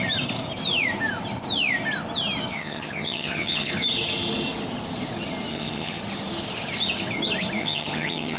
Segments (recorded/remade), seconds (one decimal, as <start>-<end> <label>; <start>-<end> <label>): 0.0-2.5 recorded; 2.5-3.7 remade; 3.7-5.5 recorded; 5.5-6.0 remade; 6.0-7.6 recorded; 7.6-8.4 remade